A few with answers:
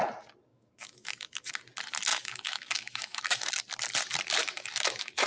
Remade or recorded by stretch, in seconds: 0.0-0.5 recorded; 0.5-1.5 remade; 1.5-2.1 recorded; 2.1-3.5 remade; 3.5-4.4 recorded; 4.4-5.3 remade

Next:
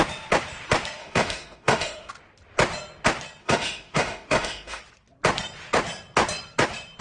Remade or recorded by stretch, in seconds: 0.0-1.0 recorded; 1.0-2.1 remade; 2.1-3.4 recorded; 3.4-4.8 remade; 4.8-7.0 recorded

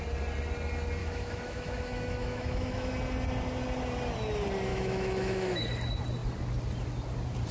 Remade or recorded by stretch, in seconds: 0.0-1.0 recorded; 1.0-2.9 remade; 2.9-4.7 recorded; 4.7-5.6 remade; 5.6-7.5 recorded

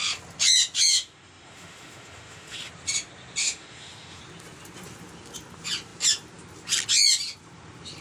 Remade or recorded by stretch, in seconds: 0.0-0.9 recorded; 0.9-2.7 remade; 2.7-3.4 recorded; 3.4-4.2 remade; 4.2-8.0 recorded